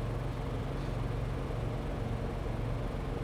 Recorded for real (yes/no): yes